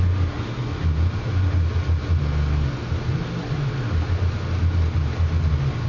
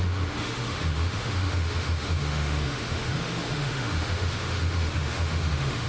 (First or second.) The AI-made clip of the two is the second